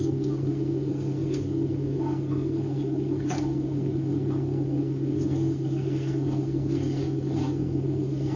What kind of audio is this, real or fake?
fake